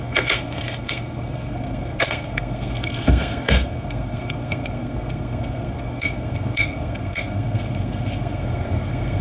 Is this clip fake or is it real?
fake